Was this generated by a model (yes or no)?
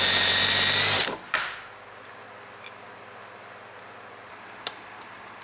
no